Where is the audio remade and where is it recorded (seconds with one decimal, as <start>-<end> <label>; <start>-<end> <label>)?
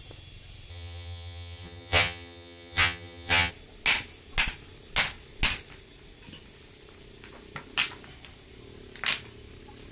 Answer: 0.0-0.7 recorded; 0.7-3.5 remade; 3.5-9.9 recorded